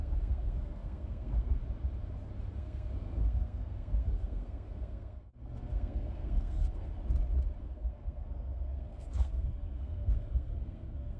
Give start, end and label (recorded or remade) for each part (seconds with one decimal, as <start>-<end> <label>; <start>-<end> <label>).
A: 0.0-1.6 remade; 1.6-2.6 recorded; 2.6-6.9 remade; 6.9-7.6 recorded; 7.6-11.2 remade